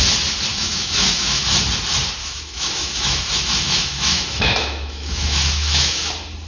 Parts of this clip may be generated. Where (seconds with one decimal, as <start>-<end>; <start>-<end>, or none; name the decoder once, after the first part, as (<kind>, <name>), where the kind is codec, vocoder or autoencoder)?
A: 0.5-1.4 (autoencoder, DAC-VAE); 2.2-6.1